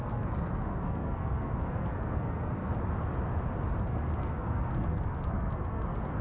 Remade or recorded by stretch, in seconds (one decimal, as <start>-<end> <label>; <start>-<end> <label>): 0.0-2.6 remade; 2.6-3.8 recorded; 3.8-6.2 remade